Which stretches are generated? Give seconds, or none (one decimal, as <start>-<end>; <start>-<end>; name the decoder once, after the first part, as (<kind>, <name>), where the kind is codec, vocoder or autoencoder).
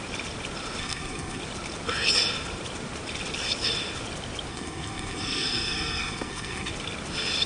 0.8-1.4 (codec, SNAC); 4.5-6.7